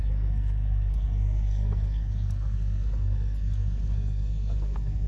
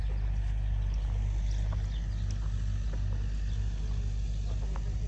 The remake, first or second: first